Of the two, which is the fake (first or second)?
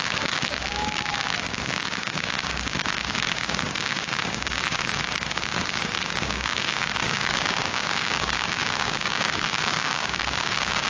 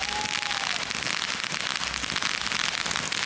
first